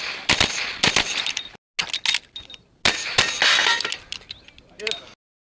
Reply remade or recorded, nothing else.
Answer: recorded